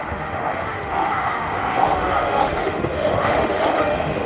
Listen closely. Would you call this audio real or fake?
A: fake